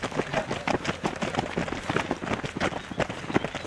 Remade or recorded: recorded